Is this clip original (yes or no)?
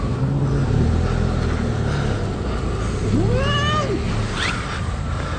yes